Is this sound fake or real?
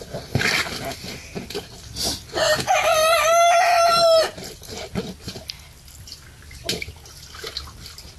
real